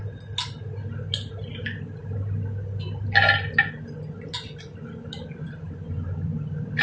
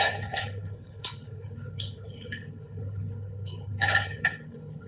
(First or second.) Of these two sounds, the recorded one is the first